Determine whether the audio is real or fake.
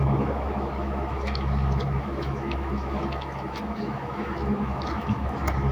fake